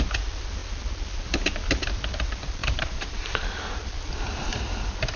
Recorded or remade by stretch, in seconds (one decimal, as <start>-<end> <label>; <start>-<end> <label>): 0.0-2.6 recorded; 2.6-3.5 remade; 3.5-5.2 recorded